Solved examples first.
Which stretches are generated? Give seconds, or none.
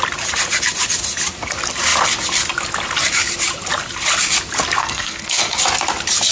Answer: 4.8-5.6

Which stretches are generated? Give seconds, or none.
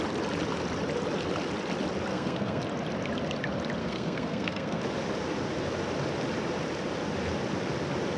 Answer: 2.1-2.6; 3.8-4.8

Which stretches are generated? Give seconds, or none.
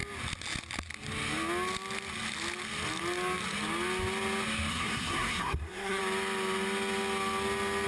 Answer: 4.7-6.0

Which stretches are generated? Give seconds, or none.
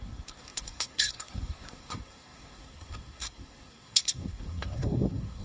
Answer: 0.0-5.4